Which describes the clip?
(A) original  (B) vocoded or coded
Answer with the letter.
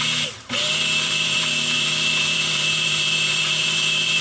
B